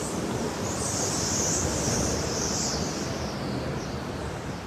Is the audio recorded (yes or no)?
yes